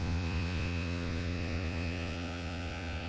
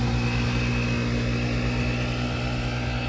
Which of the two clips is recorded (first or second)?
second